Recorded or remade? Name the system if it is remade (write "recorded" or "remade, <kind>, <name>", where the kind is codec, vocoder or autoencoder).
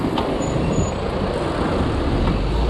recorded